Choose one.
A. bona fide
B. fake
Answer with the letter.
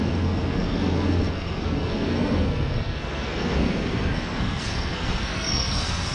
B